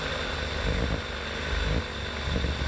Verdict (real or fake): real